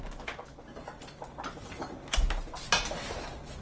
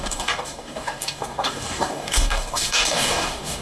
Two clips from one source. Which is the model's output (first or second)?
second